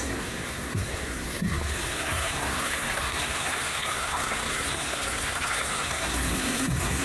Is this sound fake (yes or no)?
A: yes